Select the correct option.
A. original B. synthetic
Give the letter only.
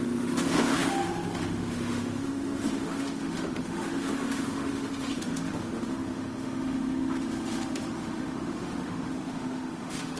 B